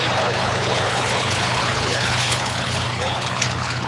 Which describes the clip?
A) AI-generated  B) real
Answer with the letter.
A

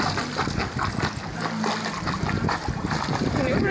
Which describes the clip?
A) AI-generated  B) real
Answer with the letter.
B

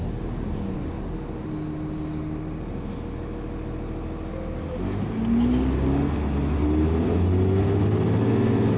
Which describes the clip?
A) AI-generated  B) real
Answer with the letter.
B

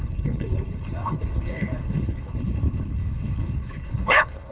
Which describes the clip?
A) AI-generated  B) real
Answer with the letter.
A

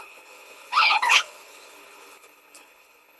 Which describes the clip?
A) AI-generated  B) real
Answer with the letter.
A